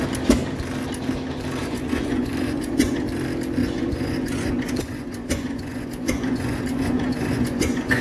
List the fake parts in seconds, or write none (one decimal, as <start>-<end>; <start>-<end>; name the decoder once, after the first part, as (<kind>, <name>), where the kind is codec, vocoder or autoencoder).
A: 1.6-3.0 (vocoder, Vocos); 3.6-8.0